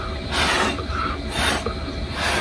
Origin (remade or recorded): recorded